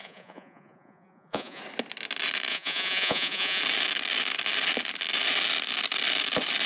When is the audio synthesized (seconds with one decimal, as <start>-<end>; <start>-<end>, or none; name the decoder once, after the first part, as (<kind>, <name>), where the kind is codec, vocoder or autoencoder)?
0.0-1.6 (vocoder, Vocos); 2.5-3.6